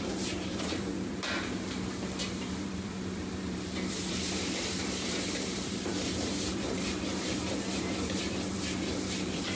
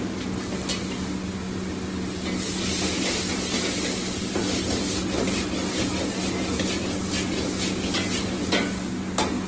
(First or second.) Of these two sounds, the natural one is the second